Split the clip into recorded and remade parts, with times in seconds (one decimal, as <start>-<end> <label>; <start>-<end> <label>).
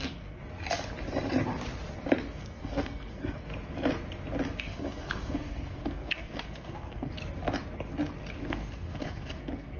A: 0.0-0.4 remade; 0.4-2.4 recorded; 2.4-3.5 remade; 3.5-4.6 recorded; 4.6-7.1 remade; 7.1-8.5 recorded; 8.5-9.8 remade